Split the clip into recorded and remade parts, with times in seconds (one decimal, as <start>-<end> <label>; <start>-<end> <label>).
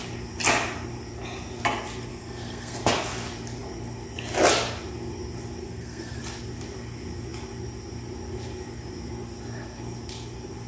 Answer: 0.0-2.1 recorded; 2.1-2.8 remade; 2.8-5.6 recorded; 5.6-6.2 remade; 6.2-10.7 recorded